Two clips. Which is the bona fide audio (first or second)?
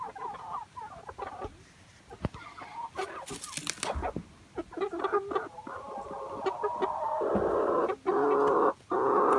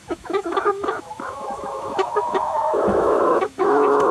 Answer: first